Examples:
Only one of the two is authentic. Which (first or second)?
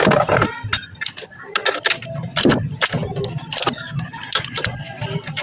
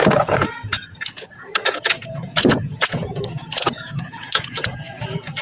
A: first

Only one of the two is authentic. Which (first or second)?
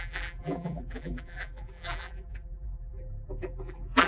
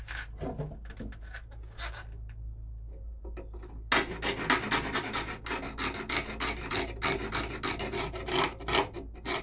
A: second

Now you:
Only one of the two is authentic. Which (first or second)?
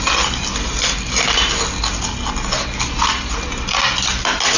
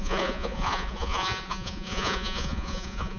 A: first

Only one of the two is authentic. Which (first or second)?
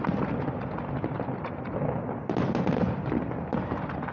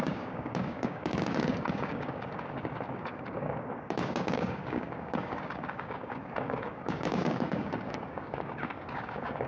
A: first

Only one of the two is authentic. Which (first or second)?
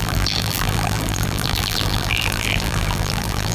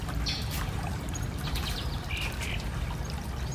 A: second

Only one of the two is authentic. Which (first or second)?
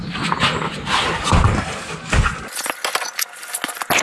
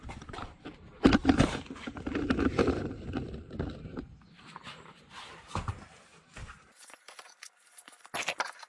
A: first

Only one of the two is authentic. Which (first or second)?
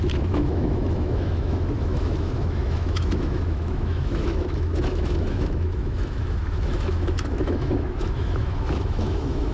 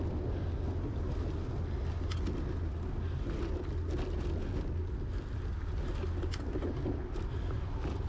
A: second